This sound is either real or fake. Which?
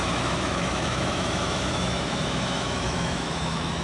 fake